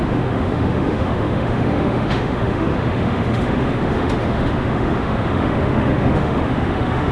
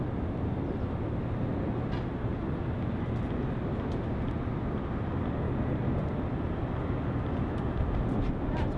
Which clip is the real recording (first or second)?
second